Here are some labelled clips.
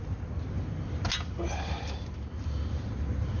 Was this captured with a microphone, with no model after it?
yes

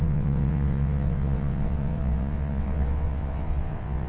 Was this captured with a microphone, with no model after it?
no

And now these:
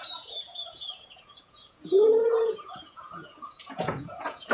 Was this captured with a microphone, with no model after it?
no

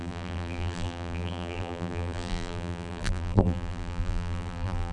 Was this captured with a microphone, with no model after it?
no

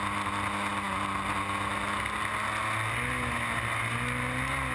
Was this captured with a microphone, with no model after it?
yes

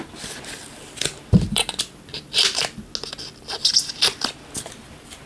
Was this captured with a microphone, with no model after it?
yes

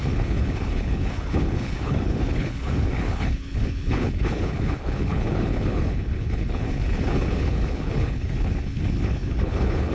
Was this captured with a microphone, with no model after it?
no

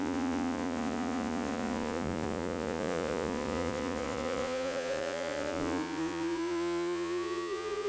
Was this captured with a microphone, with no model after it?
no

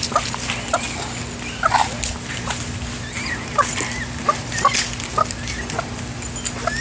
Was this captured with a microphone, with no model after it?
yes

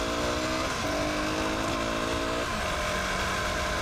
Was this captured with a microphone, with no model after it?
yes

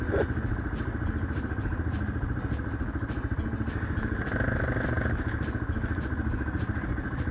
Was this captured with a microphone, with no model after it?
yes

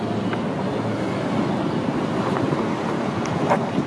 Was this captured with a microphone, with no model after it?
yes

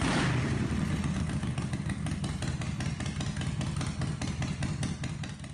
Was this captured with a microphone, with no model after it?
yes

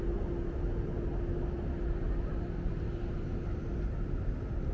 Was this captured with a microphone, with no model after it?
yes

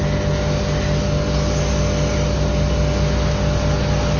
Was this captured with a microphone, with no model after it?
yes